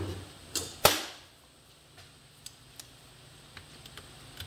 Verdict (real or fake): real